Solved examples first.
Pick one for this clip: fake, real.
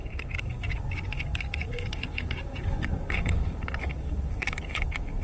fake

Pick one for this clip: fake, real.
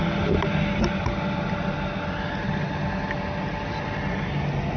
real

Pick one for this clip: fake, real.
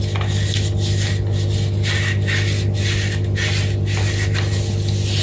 real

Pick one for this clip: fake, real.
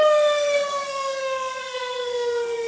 fake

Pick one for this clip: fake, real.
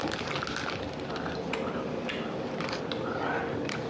real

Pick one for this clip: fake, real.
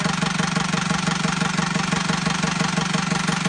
real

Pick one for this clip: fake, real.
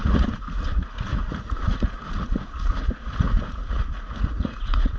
fake